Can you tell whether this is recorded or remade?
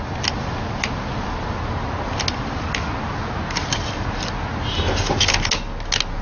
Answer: recorded